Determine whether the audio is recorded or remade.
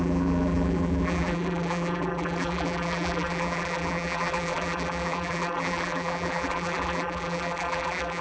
remade